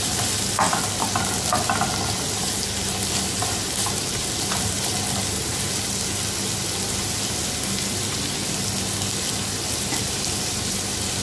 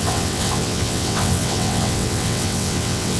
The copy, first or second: second